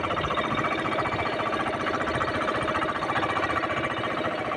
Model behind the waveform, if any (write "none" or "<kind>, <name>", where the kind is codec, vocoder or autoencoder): none